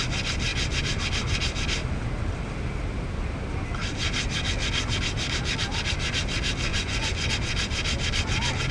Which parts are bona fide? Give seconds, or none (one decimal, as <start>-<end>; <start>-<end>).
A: 0.0-6.7; 7.3-8.7